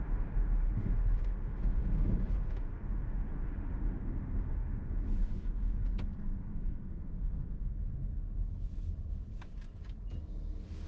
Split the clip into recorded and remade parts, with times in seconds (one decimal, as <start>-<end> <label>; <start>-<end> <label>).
0.0-5.8 remade; 5.8-6.3 recorded; 6.3-7.9 remade; 7.9-10.9 recorded